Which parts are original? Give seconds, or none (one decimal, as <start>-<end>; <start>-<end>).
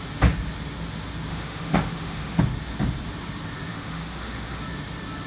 0.0-1.3; 2.4-3.7; 4.6-5.3